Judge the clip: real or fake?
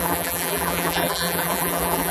fake